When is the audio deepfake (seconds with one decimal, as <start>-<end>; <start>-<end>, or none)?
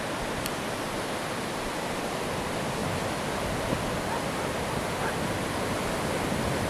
none